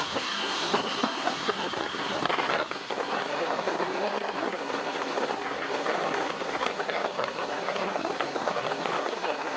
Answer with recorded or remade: remade